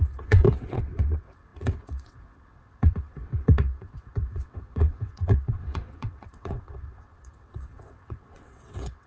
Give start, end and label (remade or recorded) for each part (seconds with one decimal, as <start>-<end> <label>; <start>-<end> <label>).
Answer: 0.0-9.1 remade